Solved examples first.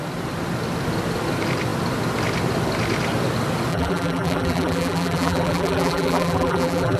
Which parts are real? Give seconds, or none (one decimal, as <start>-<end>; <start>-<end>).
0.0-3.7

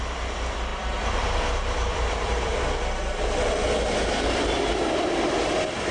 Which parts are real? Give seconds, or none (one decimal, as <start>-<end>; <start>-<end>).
0.0-5.9

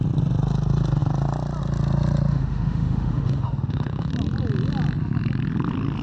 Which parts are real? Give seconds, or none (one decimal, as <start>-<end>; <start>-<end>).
0.0-2.3; 4.1-6.0

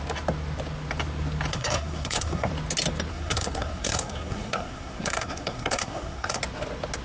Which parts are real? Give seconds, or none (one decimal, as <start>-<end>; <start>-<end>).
0.0-1.5; 2.5-3.1; 6.4-7.0

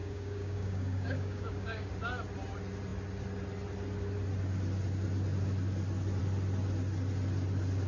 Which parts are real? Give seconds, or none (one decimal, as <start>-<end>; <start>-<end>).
1.9-7.9